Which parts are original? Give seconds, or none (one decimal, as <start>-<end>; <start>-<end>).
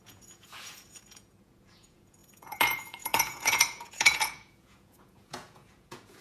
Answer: none